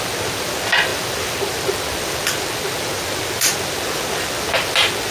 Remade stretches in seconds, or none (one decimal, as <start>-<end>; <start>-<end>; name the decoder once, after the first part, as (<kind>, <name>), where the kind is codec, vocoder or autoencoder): none